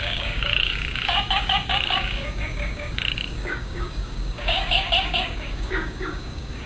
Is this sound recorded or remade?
remade